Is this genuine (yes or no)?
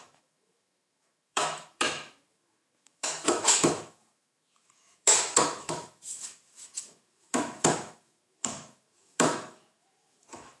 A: no